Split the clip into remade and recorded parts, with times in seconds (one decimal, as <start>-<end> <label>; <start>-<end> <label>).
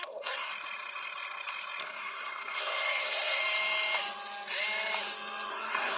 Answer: 0.0-0.5 remade; 0.5-1.8 recorded; 1.8-3.4 remade; 3.4-5.5 recorded; 5.5-6.0 remade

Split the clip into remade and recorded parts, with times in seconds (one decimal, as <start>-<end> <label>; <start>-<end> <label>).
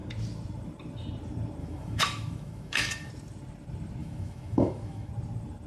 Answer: 0.0-1.6 recorded; 1.6-3.1 remade; 3.1-4.0 recorded; 4.0-5.1 remade; 5.1-5.7 recorded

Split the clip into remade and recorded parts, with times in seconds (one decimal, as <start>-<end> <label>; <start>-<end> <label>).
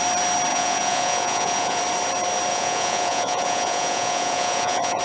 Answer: 0.0-0.5 recorded; 0.5-1.8 remade; 1.8-2.5 recorded; 2.5-5.0 remade